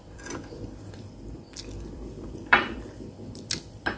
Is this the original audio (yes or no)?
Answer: no